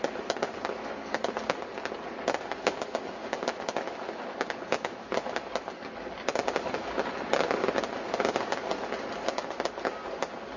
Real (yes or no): yes